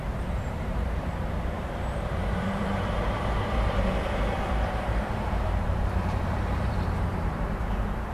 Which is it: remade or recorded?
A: remade